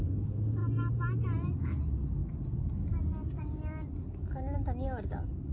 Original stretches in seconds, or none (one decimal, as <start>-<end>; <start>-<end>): 0.0-5.5

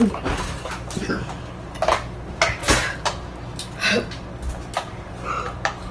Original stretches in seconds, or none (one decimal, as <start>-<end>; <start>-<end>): 0.0-5.9

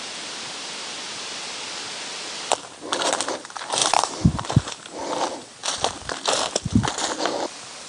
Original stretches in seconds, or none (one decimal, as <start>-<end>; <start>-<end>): 0.0-3.8; 4.5-7.9

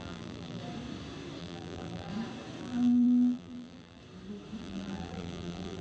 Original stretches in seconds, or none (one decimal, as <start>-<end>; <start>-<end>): 0.6-1.4; 2.1-2.6; 4.0-4.6

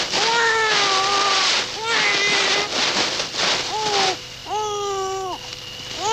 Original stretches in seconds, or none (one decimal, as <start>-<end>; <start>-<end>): 0.0-6.1

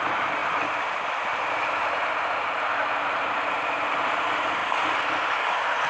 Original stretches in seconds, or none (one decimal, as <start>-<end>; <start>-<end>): 4.6-5.5